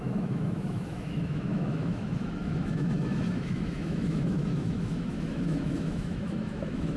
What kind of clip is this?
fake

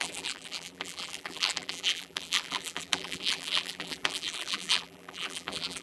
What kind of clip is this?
fake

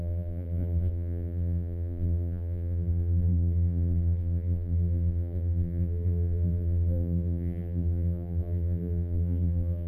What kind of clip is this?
fake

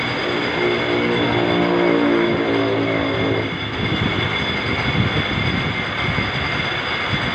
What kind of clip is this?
real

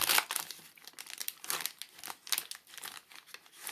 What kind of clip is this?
real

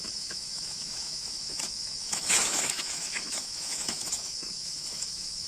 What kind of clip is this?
fake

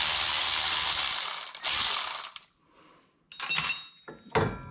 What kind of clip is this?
real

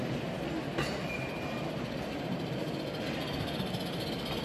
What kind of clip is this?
real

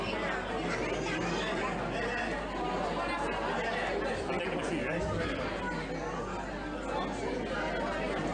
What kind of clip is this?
real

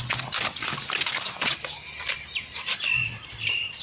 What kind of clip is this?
fake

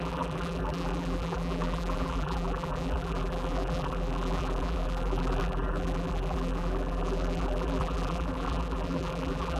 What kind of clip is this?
fake